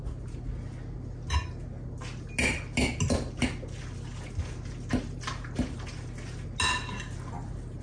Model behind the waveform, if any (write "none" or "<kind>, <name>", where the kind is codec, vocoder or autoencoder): none